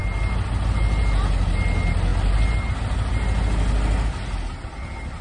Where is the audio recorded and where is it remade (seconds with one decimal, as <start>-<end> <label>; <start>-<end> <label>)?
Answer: 0.0-5.2 recorded